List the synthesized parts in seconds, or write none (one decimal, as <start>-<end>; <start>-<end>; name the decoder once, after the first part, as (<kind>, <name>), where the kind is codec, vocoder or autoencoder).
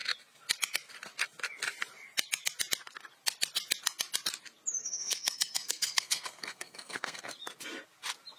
4.8-7.2 (codec, SNAC)